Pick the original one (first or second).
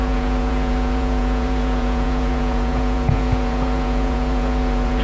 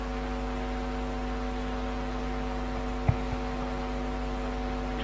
second